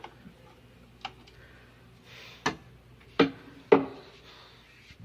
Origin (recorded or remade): recorded